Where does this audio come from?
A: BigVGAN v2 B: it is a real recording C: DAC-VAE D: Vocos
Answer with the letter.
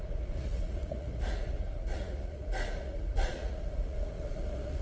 D